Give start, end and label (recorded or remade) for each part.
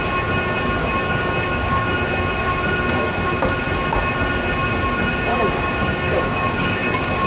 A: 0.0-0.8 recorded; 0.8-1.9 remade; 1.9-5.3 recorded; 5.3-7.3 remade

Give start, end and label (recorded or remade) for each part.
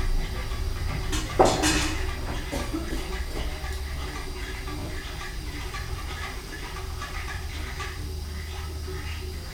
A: 0.0-4.8 recorded; 4.8-8.0 remade; 8.0-9.5 recorded